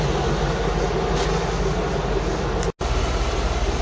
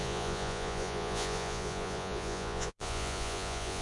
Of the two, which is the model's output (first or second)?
second